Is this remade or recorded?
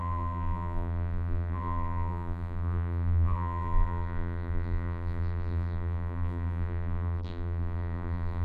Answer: remade